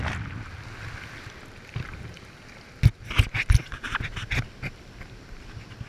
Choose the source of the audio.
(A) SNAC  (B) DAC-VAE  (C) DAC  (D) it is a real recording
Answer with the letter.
D